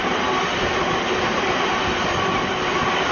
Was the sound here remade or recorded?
recorded